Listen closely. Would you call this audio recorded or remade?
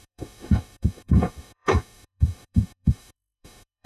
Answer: remade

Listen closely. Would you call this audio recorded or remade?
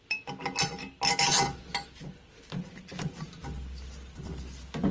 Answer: recorded